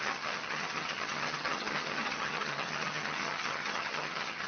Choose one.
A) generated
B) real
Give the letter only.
A